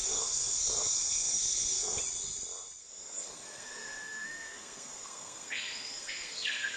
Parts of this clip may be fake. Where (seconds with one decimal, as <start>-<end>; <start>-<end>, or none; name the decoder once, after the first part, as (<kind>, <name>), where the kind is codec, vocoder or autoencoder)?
0.0-2.0 (codec, SNAC); 2.8-6.8